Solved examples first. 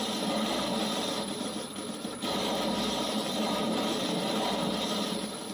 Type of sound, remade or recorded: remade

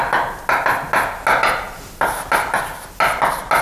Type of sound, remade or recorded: recorded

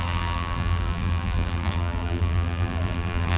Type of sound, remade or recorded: remade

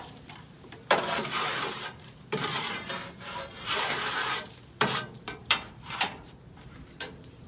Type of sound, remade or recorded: remade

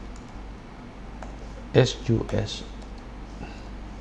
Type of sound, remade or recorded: recorded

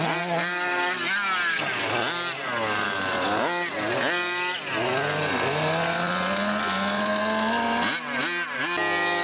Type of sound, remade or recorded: recorded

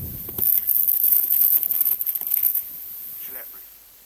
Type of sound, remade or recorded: recorded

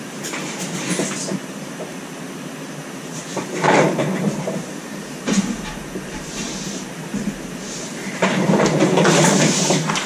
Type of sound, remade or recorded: remade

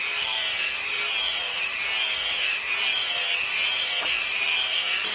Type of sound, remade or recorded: remade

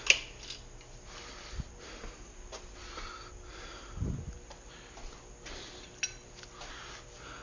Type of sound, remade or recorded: recorded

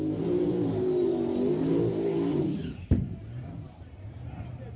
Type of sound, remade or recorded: remade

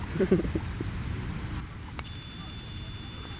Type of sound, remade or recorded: remade